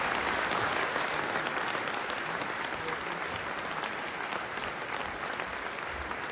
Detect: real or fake real